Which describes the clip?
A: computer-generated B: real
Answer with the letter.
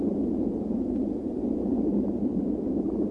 B